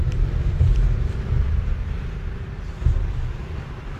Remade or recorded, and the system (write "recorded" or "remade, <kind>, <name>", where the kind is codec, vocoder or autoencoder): remade, vocoder, BigVGAN v2